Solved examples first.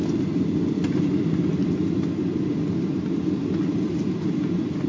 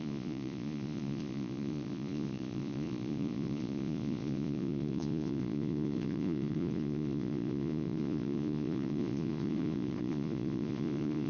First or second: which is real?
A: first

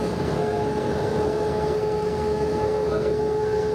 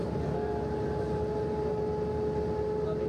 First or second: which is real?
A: second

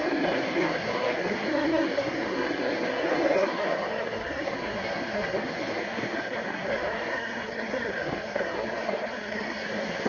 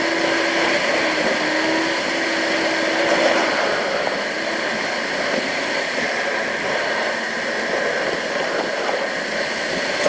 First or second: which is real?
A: second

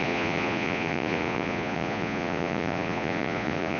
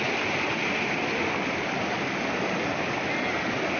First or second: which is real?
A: second